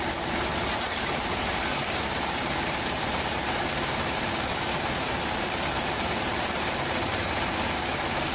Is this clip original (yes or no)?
no